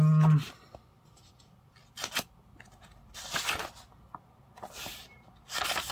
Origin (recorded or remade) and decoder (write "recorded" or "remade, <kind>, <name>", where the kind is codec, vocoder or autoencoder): recorded